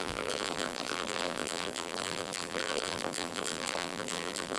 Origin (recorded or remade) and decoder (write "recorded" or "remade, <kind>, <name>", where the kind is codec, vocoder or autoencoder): remade, vocoder, BigVGAN v2